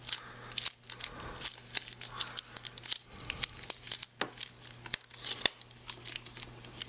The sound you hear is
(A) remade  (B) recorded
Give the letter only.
B